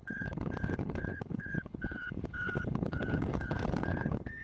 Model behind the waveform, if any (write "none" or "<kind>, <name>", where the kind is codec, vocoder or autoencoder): codec, HILCodec